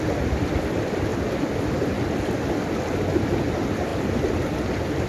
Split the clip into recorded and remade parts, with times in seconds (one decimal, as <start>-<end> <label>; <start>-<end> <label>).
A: 0.0-1.1 remade; 1.1-3.0 recorded; 3.0-5.1 remade